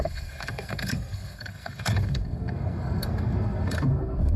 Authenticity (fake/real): fake